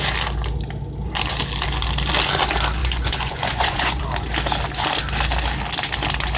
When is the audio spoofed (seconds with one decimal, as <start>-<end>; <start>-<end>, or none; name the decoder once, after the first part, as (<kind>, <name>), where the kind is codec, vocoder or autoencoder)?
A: 2.8-4.0 (vocoder, Vocos)